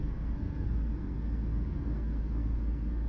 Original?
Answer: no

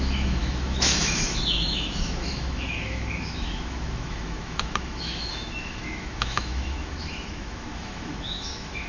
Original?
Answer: no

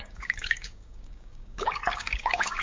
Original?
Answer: no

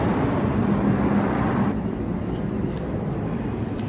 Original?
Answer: yes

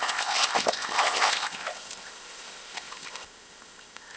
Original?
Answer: no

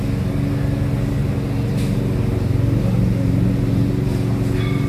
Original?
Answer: yes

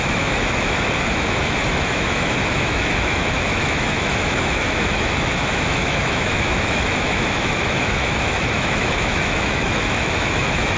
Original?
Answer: no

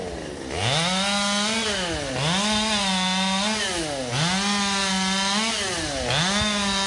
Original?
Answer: yes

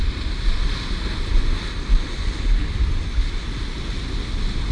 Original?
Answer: yes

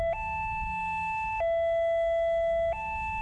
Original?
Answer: yes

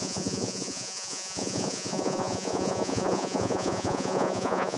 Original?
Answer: no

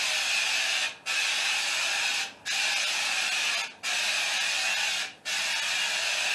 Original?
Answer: yes